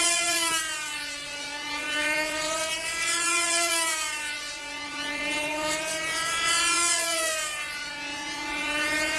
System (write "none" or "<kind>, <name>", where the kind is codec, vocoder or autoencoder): vocoder, Vocos